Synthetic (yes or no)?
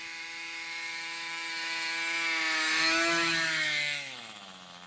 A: yes